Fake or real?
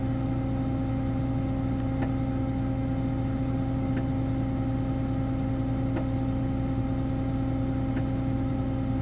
real